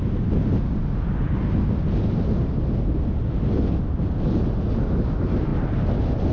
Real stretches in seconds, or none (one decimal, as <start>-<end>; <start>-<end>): 0.0-6.3